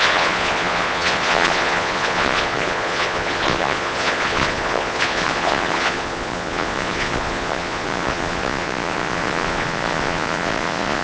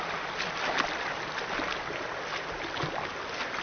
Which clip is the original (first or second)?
second